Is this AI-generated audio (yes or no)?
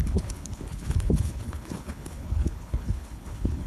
yes